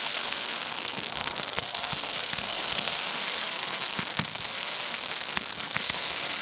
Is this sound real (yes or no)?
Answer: no